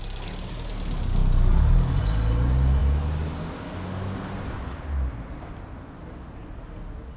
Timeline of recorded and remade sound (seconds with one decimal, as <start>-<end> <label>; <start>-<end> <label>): 0.0-7.2 recorded